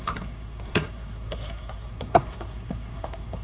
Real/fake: fake